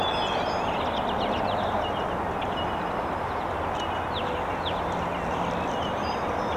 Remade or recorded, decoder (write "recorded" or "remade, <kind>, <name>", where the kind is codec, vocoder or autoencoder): recorded